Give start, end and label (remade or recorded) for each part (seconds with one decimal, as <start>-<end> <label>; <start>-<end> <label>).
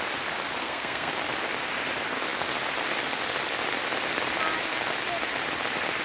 0.0-0.6 recorded; 0.6-1.1 remade; 1.1-6.0 recorded